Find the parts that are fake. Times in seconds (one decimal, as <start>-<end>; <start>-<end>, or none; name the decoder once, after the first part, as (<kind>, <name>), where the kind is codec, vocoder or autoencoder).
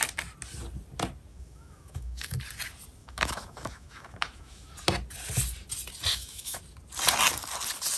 1.3-2.4 (autoencoder, DAC-VAE); 3.0-4.7; 6.1-6.6